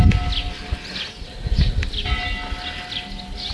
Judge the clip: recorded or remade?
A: recorded